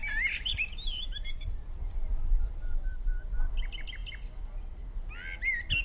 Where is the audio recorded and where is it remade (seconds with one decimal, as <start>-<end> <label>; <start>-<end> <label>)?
0.0-3.5 remade; 3.5-5.8 recorded